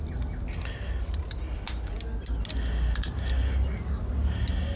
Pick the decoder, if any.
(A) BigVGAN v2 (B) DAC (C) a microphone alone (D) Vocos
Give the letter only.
C